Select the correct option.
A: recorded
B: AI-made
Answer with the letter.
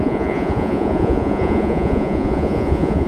B